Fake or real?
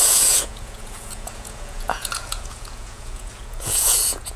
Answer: fake